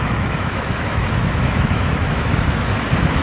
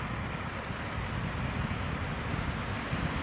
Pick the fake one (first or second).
first